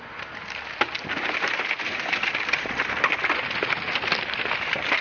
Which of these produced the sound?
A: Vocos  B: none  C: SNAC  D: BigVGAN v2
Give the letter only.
B